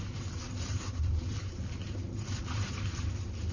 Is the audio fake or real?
fake